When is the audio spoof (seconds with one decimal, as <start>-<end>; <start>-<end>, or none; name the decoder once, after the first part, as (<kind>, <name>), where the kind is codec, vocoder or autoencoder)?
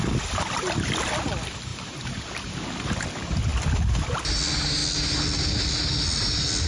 1.7-2.6 (vocoder, BigVGAN v2)